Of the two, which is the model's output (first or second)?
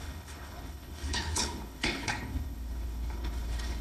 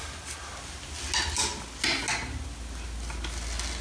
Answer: first